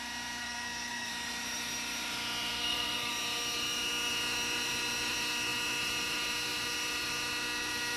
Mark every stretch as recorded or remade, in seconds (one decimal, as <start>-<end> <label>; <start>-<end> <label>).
0.0-0.4 recorded; 0.4-1.1 remade; 1.1-2.5 recorded; 2.5-3.1 remade; 3.1-8.0 recorded